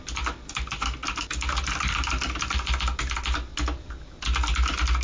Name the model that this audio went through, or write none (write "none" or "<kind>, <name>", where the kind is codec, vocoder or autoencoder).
none